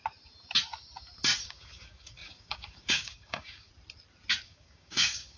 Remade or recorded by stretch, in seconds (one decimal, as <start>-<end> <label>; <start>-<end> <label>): 0.0-1.4 recorded; 1.4-3.7 remade; 3.7-4.4 recorded; 4.4-5.4 remade